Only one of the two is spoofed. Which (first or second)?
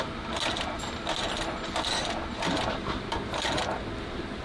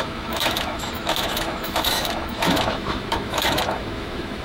second